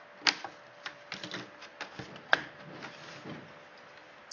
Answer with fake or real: real